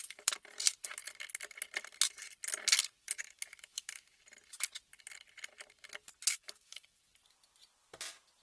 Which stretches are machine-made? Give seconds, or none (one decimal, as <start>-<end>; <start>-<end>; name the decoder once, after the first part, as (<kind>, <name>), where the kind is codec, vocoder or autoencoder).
3.0-4.2 (autoencoder, DAC-VAE); 6.3-7.0